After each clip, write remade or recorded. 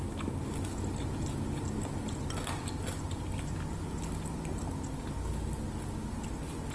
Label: recorded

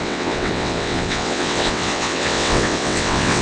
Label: remade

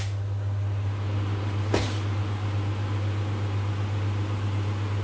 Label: recorded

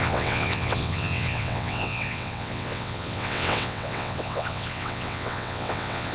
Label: remade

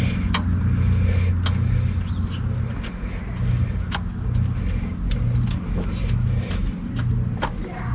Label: recorded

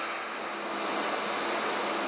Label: recorded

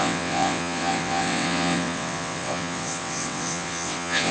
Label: remade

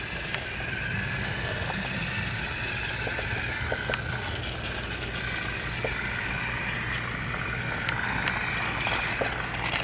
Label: recorded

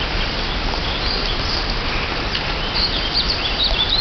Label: recorded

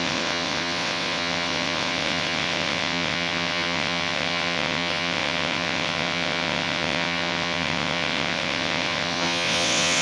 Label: remade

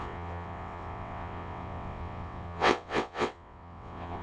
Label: remade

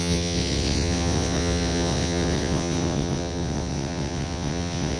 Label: remade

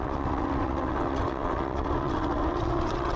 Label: remade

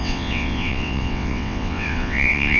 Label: remade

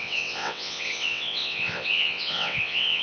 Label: remade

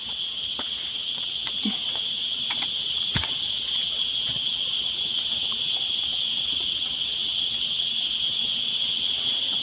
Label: remade